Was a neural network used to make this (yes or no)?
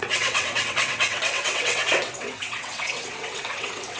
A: yes